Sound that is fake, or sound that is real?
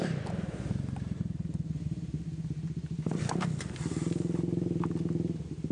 fake